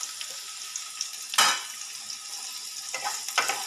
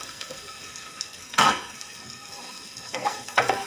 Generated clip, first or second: second